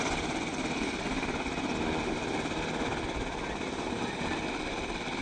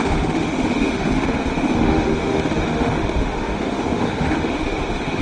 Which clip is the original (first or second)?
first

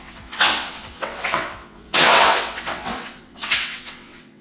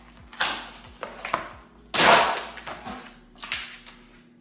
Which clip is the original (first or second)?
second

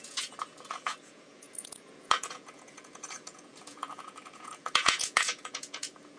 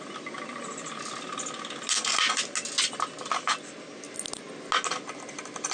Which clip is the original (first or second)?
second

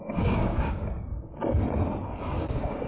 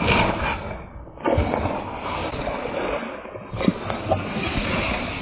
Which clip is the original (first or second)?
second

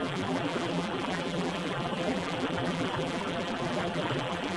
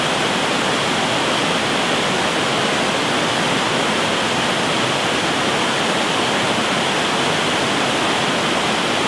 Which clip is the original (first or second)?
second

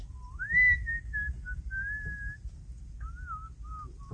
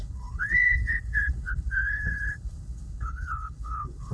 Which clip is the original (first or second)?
first